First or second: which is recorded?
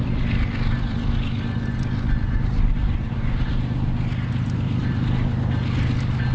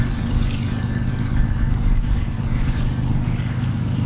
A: first